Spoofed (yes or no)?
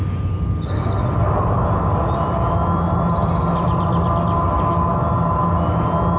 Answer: no